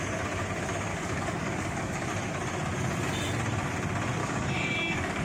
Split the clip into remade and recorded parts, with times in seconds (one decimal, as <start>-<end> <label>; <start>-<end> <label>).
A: 0.0-0.9 recorded; 0.9-2.1 remade; 2.1-4.2 recorded; 4.2-5.2 remade